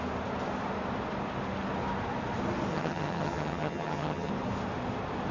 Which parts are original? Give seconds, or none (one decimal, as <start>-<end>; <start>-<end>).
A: 0.0-2.7; 4.3-5.3